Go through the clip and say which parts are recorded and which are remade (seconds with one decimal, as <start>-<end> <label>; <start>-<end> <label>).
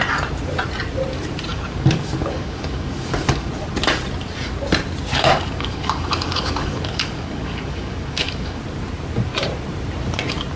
0.0-1.5 recorded; 1.5-3.5 remade; 3.5-5.1 recorded; 5.1-8.6 remade; 8.6-10.6 recorded